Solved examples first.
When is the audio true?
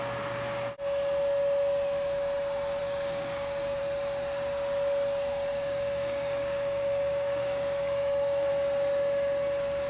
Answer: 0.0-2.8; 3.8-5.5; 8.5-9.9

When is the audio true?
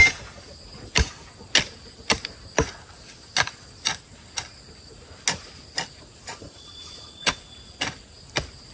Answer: 0.0-6.3; 7.4-8.7